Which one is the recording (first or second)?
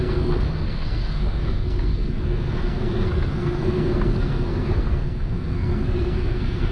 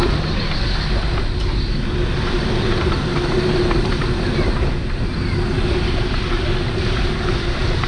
second